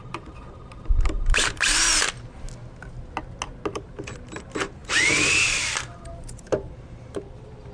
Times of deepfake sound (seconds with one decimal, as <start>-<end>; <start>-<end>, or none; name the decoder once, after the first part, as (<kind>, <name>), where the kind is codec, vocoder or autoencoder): 0.0-1.9 (vocoder, BigVGAN v2); 3.7-7.7